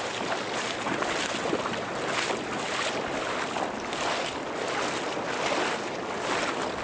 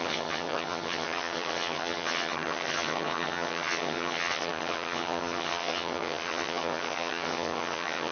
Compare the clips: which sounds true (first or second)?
first